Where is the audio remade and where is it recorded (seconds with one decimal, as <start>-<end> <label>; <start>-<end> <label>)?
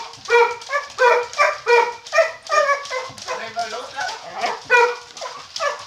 0.0-3.6 recorded; 3.6-4.5 remade; 4.5-5.9 recorded